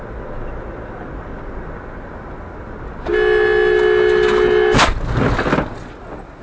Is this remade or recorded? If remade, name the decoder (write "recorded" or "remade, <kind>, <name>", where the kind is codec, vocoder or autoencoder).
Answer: recorded